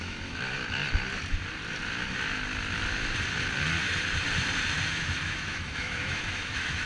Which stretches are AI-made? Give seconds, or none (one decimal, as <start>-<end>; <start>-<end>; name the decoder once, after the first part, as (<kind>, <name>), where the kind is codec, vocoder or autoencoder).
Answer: 0.0-0.8 (autoencoder, DAC-VAE); 4.9-6.9